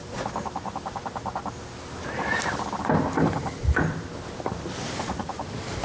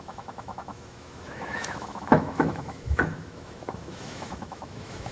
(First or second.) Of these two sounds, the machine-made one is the second